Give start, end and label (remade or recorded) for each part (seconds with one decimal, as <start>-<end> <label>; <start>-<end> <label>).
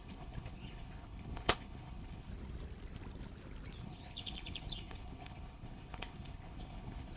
0.0-2.3 remade; 2.3-3.8 recorded; 3.8-7.2 remade